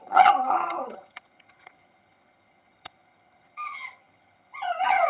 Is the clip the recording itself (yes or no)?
no